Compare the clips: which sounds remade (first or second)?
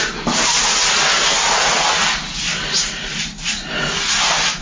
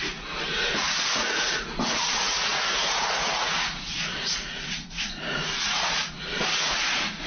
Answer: second